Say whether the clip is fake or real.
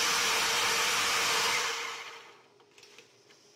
real